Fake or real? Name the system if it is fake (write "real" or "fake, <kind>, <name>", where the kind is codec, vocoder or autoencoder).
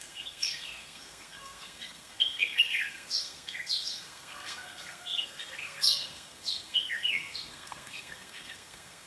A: fake, codec, SNAC